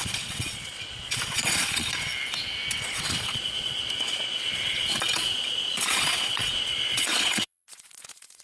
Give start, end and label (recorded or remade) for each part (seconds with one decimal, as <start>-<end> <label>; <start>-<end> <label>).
0.0-2.1 remade; 2.1-2.8 recorded; 2.8-8.4 remade